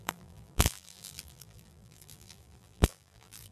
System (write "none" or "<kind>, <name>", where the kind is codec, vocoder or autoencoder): vocoder, BigVGAN v2